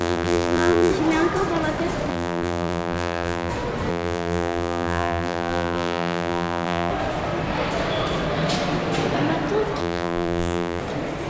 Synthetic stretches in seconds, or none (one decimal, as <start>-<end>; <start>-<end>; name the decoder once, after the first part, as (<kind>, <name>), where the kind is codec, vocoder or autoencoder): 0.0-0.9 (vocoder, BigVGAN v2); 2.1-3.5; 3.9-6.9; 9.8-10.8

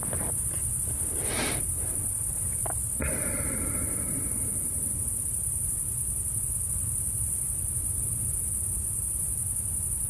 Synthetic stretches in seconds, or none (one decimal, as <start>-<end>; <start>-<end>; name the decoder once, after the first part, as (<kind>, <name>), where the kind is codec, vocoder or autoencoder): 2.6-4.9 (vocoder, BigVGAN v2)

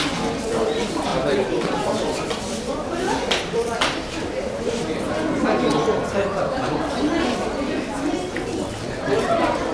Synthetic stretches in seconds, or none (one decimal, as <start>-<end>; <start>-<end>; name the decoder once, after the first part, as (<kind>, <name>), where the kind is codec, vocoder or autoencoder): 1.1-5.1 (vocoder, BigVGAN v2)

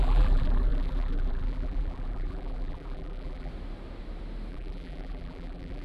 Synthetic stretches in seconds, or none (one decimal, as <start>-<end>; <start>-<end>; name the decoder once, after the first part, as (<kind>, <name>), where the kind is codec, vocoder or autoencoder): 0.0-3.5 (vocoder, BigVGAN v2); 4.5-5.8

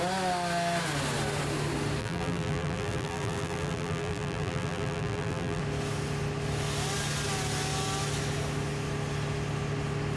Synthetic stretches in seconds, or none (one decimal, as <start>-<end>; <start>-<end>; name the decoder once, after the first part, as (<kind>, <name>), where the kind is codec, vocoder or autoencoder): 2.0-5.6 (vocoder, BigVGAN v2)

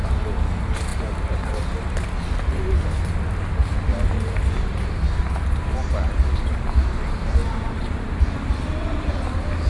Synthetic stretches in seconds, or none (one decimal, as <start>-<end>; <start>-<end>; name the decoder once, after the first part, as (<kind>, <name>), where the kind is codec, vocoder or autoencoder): 7.4-8.2 (vocoder, BigVGAN v2)

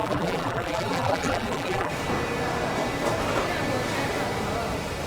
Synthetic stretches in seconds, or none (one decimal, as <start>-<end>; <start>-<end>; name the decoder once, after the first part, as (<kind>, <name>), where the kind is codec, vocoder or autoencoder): 0.0-1.9 (vocoder, BigVGAN v2)

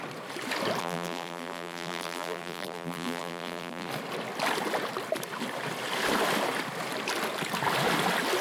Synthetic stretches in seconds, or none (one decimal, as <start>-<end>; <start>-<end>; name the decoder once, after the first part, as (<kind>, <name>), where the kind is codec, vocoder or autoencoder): 0.8-3.9 (vocoder, BigVGAN v2)